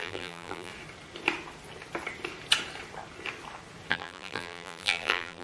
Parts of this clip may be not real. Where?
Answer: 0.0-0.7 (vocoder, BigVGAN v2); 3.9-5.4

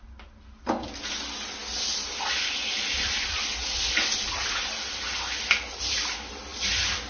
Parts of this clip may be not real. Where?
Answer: none

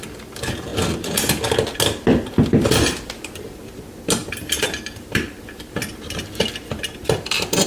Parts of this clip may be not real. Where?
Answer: 0.0-0.7 (vocoder, BigVGAN v2); 2.8-7.7

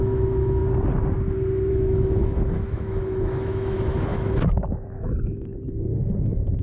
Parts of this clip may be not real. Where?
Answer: 0.0-0.6 (autoencoder, DAC-VAE); 1.7-6.6

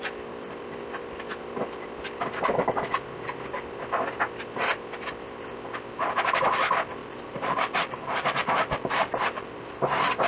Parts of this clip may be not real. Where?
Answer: 7.0-9.5 (vocoder, BigVGAN v2)